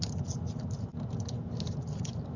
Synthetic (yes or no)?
no